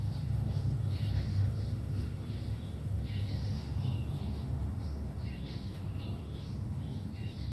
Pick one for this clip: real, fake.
fake